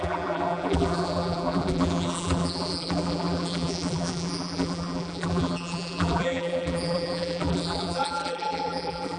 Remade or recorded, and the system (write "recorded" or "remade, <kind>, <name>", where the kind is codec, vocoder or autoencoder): remade, vocoder, BigVGAN v2